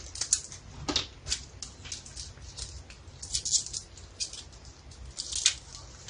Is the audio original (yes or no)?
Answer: yes